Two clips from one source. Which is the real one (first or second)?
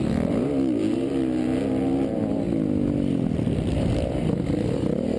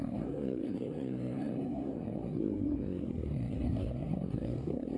first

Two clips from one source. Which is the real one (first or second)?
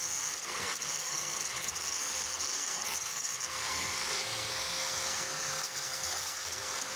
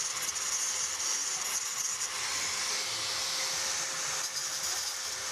second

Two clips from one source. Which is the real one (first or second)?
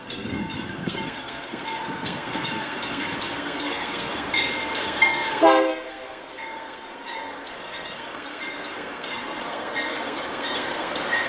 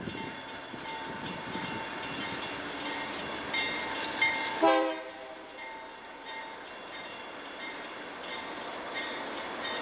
second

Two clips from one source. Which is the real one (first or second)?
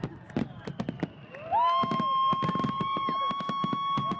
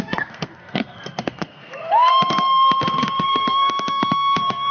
first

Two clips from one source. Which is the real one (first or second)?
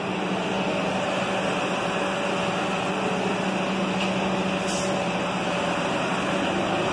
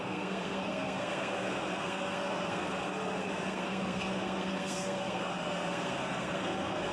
first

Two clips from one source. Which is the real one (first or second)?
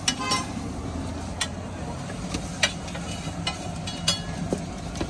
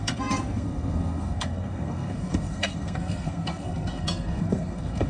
first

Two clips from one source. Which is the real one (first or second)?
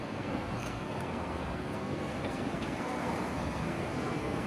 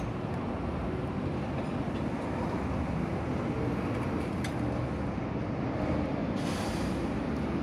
second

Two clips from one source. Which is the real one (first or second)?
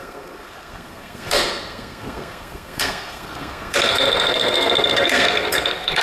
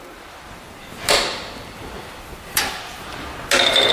second